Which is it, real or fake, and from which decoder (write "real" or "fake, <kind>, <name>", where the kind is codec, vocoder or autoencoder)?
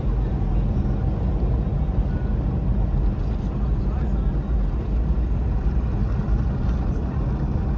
real